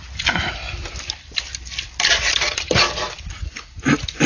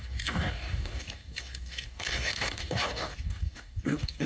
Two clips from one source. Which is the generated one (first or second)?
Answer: second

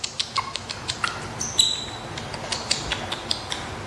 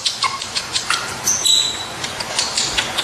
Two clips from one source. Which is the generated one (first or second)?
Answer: second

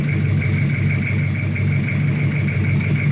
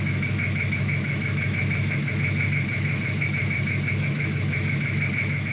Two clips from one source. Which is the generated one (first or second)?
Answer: second